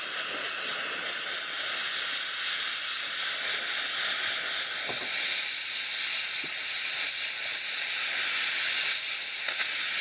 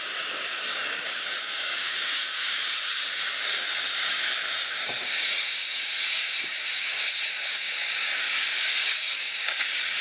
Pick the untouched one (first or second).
first